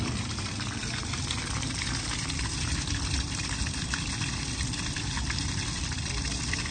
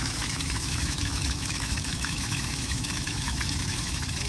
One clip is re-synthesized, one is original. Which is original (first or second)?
first